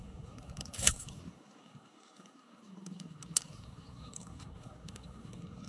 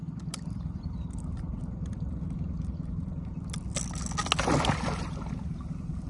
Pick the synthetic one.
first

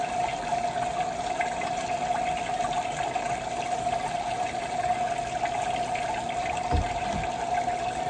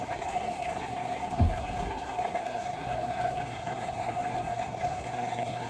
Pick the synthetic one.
second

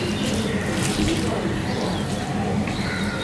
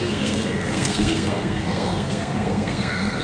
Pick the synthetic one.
second